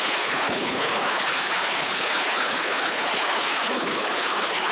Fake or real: fake